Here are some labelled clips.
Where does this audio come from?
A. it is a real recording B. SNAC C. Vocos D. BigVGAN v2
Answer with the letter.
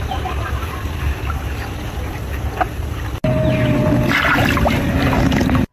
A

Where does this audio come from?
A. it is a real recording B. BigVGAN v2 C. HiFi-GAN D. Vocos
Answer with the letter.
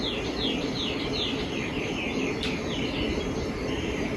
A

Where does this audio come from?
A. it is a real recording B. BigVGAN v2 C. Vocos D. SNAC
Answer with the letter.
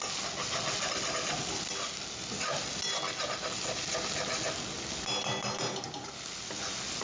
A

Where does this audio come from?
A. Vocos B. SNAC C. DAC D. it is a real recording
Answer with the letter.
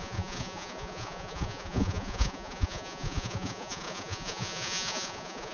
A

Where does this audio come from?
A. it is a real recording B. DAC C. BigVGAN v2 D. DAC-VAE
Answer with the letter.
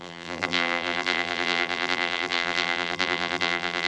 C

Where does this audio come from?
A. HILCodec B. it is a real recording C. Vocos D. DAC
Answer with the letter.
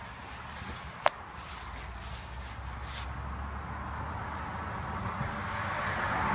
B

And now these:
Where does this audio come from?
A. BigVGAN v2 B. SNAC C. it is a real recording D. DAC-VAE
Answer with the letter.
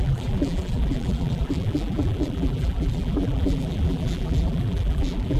A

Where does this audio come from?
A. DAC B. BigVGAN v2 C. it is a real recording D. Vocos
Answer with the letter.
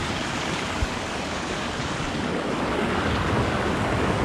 A